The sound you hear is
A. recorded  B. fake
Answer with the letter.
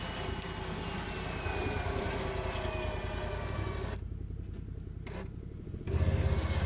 A